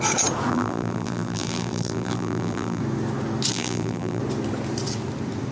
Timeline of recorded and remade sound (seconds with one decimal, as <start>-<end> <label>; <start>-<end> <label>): 0.0-0.5 recorded; 0.5-2.8 remade; 2.8-3.5 recorded; 3.5-4.2 remade; 4.2-5.5 recorded